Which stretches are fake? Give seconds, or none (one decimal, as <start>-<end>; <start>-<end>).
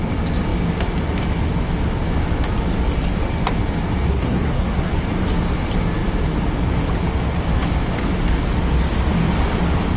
4.1-4.9